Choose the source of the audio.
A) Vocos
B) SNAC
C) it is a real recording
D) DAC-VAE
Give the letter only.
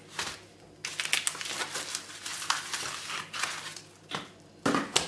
C